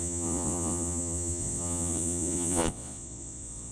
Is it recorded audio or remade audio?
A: remade